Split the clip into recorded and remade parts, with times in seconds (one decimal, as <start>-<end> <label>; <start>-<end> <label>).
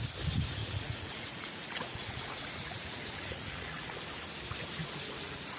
0.0-0.6 recorded; 0.6-4.0 remade; 4.0-4.8 recorded; 4.8-5.6 remade